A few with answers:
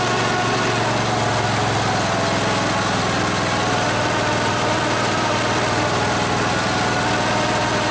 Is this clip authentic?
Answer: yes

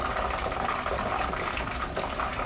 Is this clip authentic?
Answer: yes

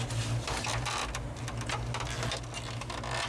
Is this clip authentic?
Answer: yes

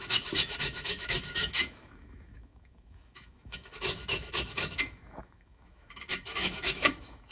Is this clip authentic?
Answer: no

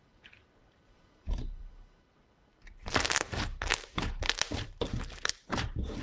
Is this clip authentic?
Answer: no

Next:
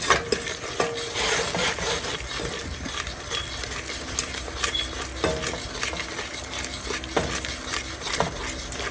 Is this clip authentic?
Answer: yes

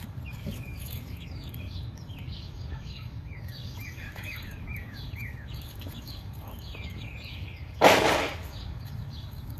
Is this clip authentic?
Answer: no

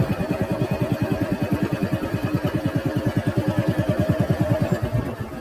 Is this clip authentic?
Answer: yes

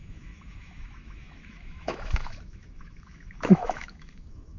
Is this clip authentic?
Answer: no